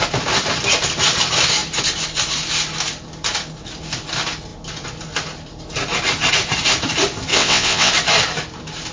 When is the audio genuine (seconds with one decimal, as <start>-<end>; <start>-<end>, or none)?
0.0-7.3; 7.9-8.9